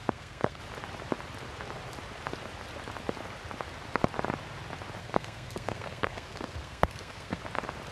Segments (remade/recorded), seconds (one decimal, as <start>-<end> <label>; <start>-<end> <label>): 0.0-0.6 remade; 0.6-5.0 recorded; 5.0-7.4 remade; 7.4-7.9 recorded